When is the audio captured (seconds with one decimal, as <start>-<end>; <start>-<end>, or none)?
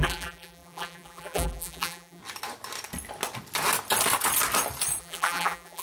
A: 2.2-5.0